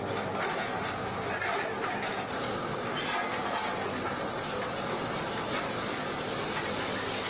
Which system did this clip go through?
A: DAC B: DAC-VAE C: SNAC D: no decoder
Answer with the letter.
D